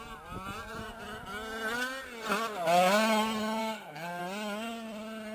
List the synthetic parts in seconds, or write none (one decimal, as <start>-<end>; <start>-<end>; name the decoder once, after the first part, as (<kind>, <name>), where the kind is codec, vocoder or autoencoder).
3.6-4.2 (codec, SNAC)